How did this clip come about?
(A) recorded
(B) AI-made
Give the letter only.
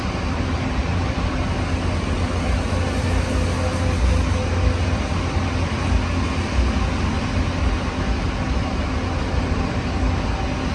A